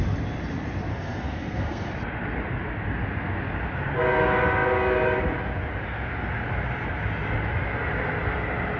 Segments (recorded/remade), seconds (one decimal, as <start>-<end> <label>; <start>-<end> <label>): 0.0-0.9 recorded; 0.9-1.9 remade; 1.9-8.8 recorded

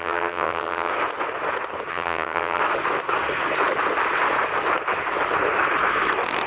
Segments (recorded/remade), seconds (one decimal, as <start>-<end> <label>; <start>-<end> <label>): 0.0-0.9 remade; 0.9-1.9 recorded; 1.9-2.6 remade; 2.6-6.5 recorded

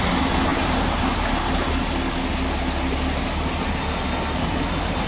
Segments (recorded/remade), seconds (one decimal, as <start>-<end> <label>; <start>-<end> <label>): 0.0-0.5 recorded; 0.5-1.7 remade; 1.7-5.1 recorded

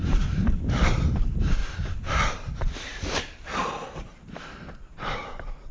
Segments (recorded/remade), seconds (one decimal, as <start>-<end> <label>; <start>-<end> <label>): 0.0-1.6 recorded; 1.6-2.2 remade; 2.2-2.9 recorded; 2.9-4.2 remade; 4.2-5.7 recorded

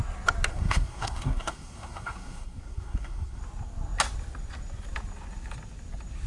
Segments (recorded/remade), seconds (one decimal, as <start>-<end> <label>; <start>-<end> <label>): 0.0-0.5 recorded; 0.5-3.4 remade; 3.4-6.3 recorded